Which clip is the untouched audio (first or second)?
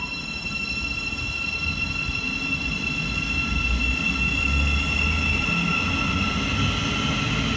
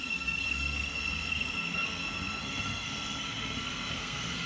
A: first